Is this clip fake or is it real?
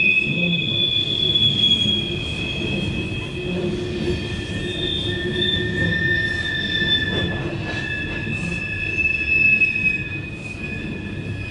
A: real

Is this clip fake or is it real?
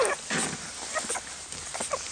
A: real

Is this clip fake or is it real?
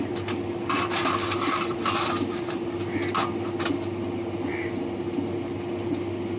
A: real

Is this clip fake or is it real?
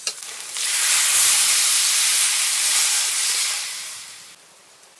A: real